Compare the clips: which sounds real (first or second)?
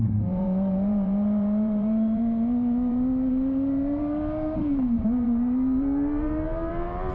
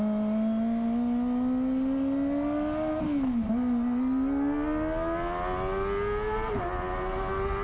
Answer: second